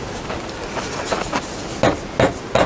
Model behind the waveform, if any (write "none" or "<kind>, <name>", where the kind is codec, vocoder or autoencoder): none